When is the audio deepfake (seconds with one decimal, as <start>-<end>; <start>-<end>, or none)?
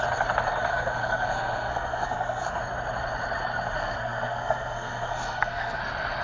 0.7-2.6; 3.8-5.8